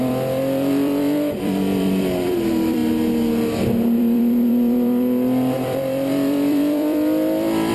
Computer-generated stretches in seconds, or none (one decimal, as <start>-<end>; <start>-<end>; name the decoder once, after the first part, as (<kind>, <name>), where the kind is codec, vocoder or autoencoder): 0.0-2.8 (vocoder, BigVGAN v2); 4.0-7.7